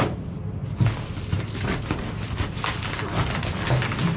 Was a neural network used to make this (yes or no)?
no